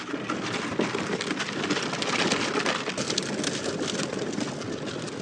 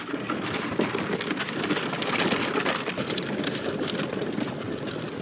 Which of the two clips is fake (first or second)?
second